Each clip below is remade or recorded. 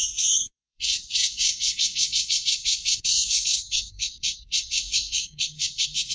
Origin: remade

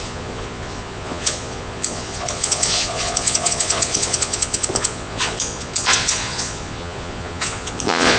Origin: remade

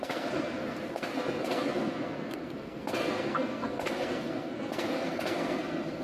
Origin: remade